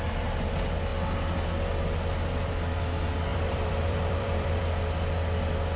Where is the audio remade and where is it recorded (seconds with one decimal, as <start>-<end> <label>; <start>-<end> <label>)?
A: 0.0-3.3 recorded; 3.3-4.6 remade; 4.6-5.8 recorded